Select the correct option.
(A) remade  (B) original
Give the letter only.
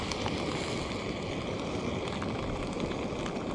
B